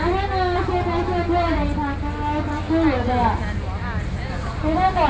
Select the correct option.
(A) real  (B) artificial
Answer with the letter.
A